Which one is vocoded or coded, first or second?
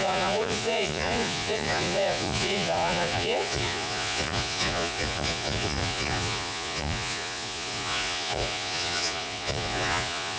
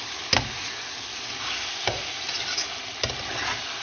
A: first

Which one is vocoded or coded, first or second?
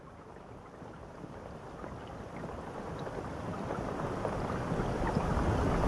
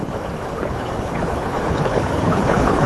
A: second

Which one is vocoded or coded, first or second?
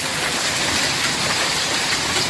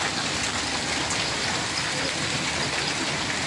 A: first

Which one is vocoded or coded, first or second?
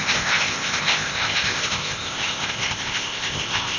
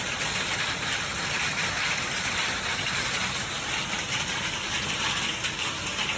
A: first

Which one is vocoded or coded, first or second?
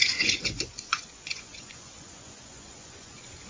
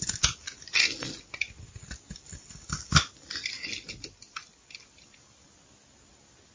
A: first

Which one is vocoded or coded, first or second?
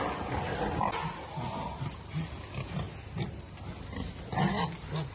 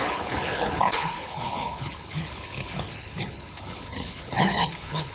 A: second